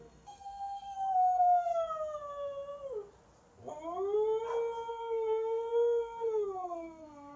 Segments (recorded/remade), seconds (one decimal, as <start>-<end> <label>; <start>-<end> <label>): 0.0-1.7 remade; 1.7-4.9 recorded; 4.9-7.4 remade